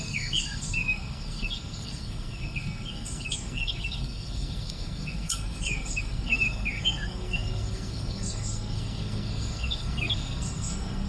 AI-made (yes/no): yes